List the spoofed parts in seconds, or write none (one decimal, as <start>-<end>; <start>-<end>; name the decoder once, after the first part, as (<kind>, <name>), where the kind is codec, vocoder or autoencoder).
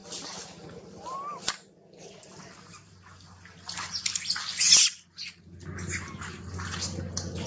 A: none